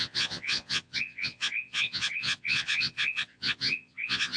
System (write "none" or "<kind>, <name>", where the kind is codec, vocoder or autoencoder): vocoder, Vocos